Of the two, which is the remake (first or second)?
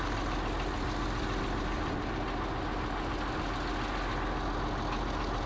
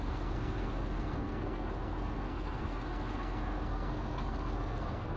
second